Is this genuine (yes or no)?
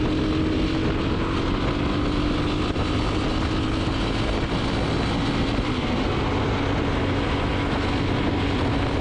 yes